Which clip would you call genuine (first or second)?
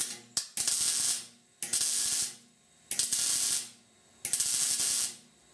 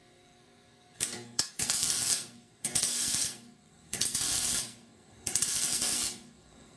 first